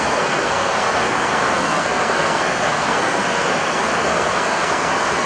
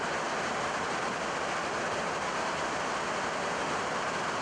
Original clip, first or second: second